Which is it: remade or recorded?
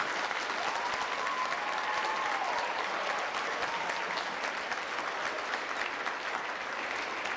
recorded